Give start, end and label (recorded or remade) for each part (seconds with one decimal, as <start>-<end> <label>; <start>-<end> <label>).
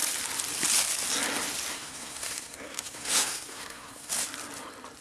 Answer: 0.0-1.7 recorded; 1.7-4.1 remade; 4.1-5.0 recorded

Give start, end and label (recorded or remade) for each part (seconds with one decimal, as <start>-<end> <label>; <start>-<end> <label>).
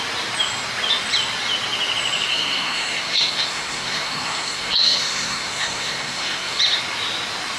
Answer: 0.0-2.3 recorded; 2.3-6.6 remade; 6.6-7.6 recorded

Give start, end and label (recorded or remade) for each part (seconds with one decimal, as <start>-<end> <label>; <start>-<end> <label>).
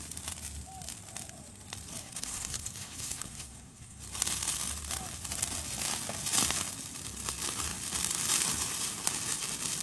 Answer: 0.0-2.0 recorded; 2.0-4.0 remade; 4.0-9.8 recorded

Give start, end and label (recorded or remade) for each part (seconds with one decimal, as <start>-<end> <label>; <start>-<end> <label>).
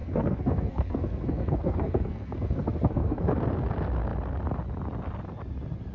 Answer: 0.0-3.4 remade; 3.4-5.9 recorded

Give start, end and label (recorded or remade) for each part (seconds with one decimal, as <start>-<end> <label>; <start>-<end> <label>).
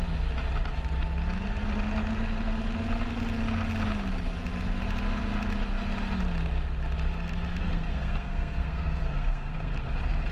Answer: 0.0-7.6 recorded; 7.6-9.7 remade; 9.7-10.3 recorded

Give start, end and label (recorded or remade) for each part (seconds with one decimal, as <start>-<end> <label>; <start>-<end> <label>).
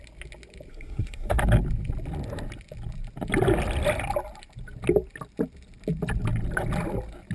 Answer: 0.0-0.7 recorded; 0.7-1.4 remade; 1.4-7.3 recorded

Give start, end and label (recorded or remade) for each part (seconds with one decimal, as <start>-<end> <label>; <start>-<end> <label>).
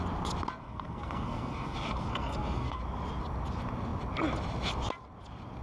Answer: 0.0-0.6 recorded; 0.6-2.8 remade; 2.8-5.6 recorded